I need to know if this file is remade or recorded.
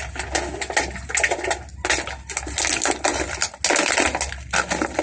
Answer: recorded